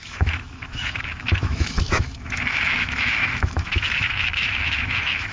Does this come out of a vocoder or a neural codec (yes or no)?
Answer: yes